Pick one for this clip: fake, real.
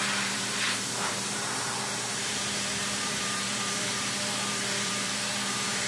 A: fake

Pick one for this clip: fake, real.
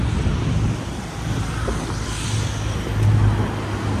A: real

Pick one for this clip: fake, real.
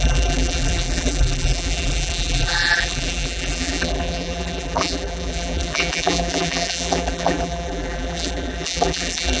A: fake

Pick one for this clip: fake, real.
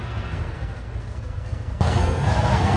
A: fake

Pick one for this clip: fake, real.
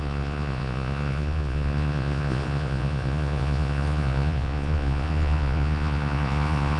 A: fake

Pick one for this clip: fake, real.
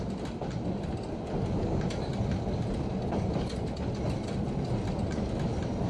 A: real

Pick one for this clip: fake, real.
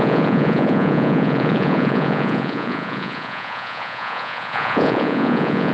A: fake